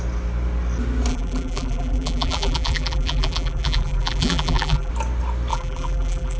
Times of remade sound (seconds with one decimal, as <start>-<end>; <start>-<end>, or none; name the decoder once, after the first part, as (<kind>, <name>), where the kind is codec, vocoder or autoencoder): 1.1-4.9 (vocoder, BigVGAN v2); 5.5-6.4